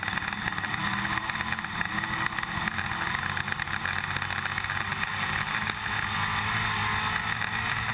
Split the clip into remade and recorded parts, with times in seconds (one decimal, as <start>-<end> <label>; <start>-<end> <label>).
0.0-7.9 recorded